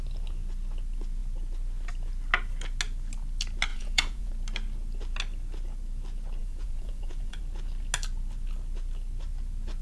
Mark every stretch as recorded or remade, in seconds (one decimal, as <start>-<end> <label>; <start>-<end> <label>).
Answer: 0.0-3.7 recorded; 3.7-4.3 remade; 4.3-6.4 recorded; 6.4-7.4 remade; 7.4-9.8 recorded